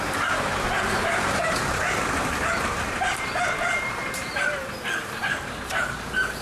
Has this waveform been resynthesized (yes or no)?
yes